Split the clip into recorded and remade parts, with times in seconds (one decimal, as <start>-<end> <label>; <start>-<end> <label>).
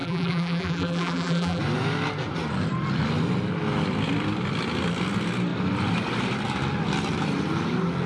0.0-1.6 remade; 1.6-8.1 recorded